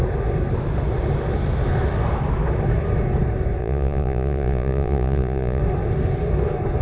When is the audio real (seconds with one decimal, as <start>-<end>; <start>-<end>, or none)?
0.0-3.6; 5.6-6.8